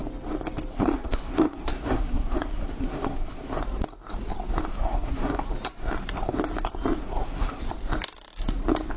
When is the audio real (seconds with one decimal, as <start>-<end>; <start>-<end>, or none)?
0.0-0.7; 3.6-4.7; 5.5-7.0; 7.6-9.0